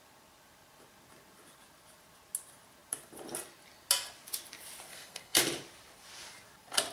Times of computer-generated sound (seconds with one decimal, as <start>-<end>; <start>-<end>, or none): 4.9-5.4